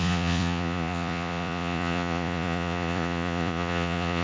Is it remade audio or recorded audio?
remade